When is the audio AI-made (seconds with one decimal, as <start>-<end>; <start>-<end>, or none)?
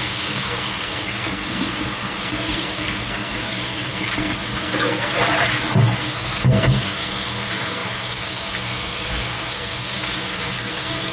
0.0-5.2; 6.0-11.1